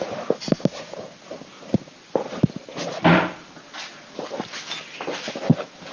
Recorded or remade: recorded